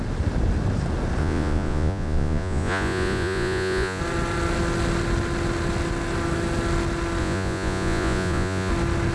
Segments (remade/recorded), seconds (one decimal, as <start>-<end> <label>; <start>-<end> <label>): 0.0-1.2 recorded; 1.2-4.0 remade; 4.0-7.2 recorded; 7.2-8.7 remade; 8.7-9.1 recorded